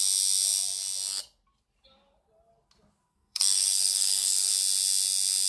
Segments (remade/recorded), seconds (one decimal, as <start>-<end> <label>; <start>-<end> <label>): 0.0-3.1 recorded; 3.1-4.5 remade; 4.5-5.5 recorded